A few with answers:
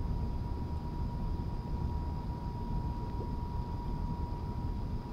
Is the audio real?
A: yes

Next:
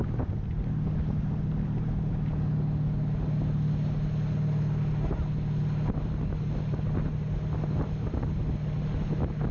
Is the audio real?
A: yes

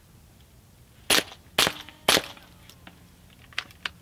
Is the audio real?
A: yes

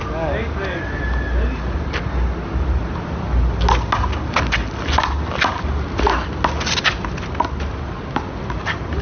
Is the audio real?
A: yes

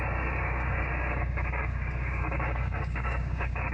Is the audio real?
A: no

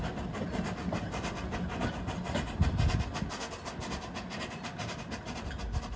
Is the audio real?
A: yes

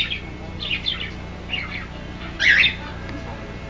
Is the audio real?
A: yes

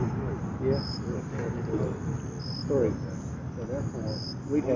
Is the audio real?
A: yes